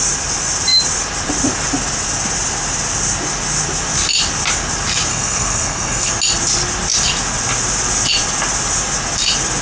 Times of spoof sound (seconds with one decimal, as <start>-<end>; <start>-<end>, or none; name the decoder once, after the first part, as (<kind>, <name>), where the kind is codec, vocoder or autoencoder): 5.1-6.1 (codec, SNAC)